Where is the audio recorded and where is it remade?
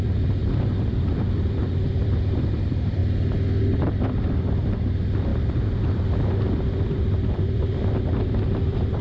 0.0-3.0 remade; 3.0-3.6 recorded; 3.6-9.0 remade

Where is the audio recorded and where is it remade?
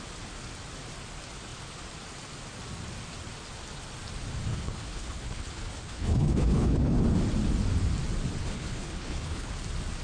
0.0-4.5 recorded; 4.5-7.0 remade; 7.0-8.4 recorded; 8.4-9.5 remade; 9.5-10.0 recorded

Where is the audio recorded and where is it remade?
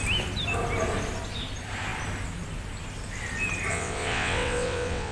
0.0-3.7 recorded; 3.7-5.1 remade